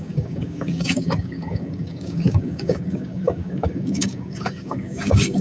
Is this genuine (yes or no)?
no